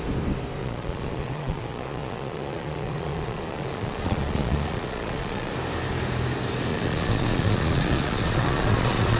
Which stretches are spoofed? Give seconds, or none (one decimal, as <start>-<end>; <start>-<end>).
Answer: 0.6-5.5; 6.7-9.2